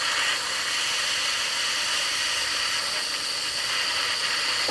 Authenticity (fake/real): fake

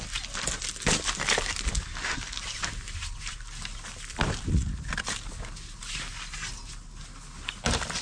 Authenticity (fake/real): real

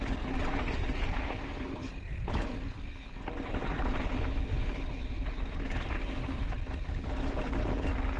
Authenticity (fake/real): real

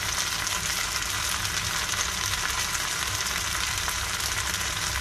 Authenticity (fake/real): real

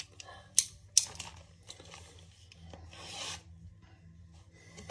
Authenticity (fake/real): real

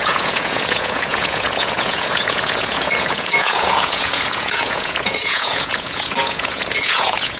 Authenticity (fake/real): fake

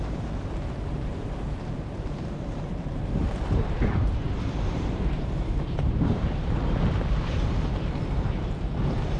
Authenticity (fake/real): fake